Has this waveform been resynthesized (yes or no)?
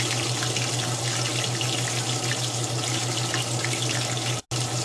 no